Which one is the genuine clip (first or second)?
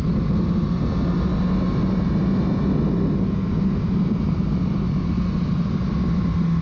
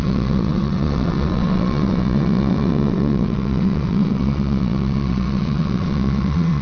first